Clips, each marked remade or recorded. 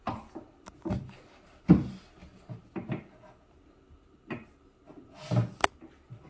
recorded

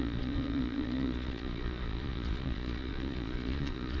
remade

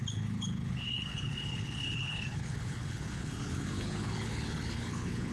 remade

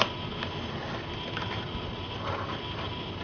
recorded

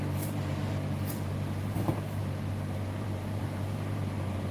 remade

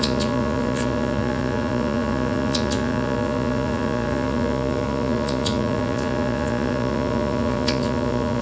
remade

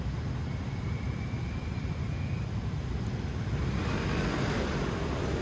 recorded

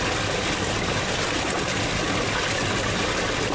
recorded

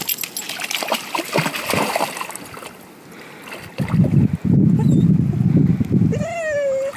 recorded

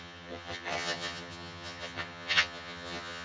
remade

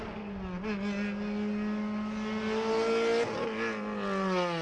recorded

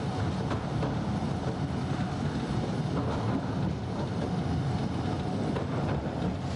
recorded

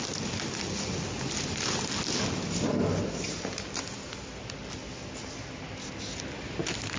recorded